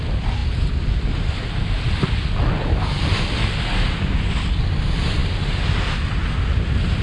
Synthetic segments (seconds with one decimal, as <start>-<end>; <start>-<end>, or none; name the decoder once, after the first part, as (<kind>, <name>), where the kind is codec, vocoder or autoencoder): none